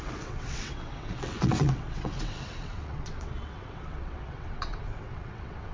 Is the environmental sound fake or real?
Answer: fake